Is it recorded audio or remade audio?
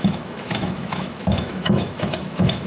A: remade